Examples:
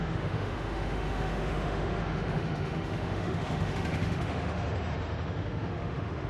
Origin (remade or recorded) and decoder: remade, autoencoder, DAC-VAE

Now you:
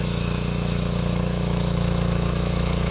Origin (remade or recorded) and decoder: remade, autoencoder, DAC-VAE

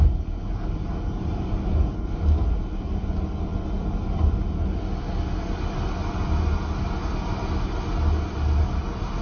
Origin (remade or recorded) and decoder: recorded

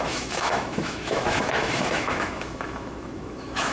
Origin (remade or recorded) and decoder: remade, autoencoder, DAC-VAE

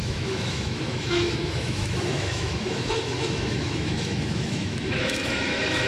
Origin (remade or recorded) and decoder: remade, autoencoder, DAC-VAE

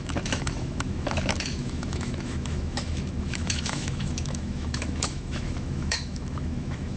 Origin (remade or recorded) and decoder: remade, autoencoder, DAC-VAE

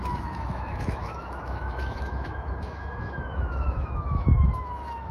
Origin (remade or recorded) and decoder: remade, autoencoder, DAC-VAE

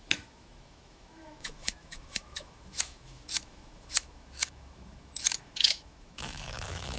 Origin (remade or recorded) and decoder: remade, autoencoder, DAC-VAE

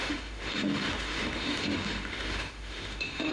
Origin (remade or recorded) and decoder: remade, autoencoder, DAC-VAE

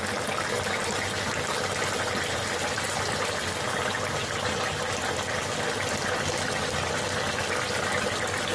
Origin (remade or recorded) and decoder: recorded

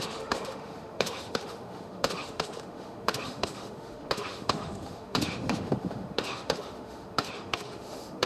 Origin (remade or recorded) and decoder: remade, autoencoder, DAC-VAE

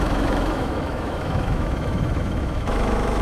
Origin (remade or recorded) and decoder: remade, autoencoder, DAC-VAE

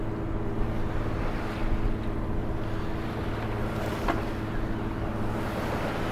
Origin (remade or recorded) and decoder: recorded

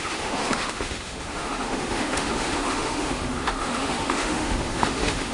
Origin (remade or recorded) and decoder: remade, autoencoder, DAC-VAE